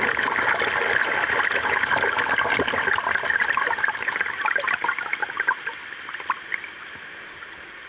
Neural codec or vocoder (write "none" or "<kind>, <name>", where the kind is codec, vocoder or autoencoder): none